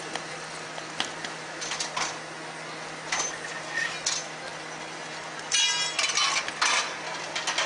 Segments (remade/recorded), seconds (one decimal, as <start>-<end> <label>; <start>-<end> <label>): 0.0-7.7 recorded